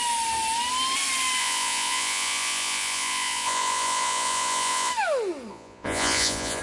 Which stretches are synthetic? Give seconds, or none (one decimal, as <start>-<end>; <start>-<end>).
1.4-4.9; 5.5-6.6